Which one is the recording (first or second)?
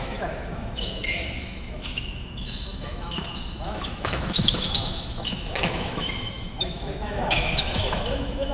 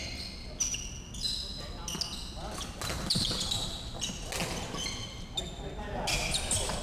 second